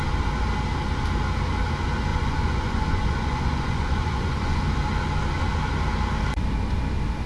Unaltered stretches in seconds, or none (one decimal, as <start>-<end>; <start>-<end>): 0.0-2.1; 4.6-7.3